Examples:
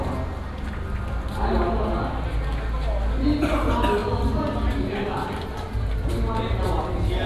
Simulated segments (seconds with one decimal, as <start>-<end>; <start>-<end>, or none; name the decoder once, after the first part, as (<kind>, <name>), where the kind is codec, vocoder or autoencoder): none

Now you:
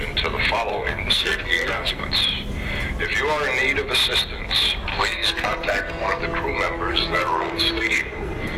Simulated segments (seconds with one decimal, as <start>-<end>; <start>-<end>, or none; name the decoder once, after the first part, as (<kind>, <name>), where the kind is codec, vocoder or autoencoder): 0.7-2.1 (codec, SNAC); 4.9-6.2; 6.9-8.6

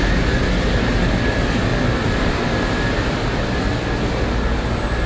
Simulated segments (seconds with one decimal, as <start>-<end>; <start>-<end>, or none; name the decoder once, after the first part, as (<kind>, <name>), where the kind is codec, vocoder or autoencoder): none